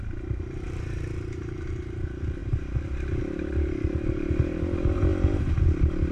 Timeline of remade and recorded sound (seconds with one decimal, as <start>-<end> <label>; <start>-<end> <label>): 0.0-5.1 remade; 5.1-6.1 recorded